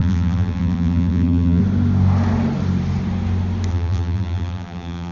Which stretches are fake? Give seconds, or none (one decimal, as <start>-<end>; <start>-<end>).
0.0-1.6; 3.7-5.1